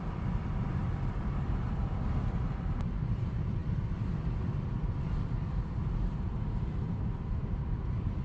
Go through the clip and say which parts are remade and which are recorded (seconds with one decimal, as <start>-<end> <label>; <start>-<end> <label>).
0.0-8.2 remade